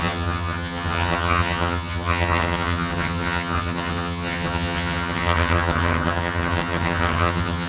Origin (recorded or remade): remade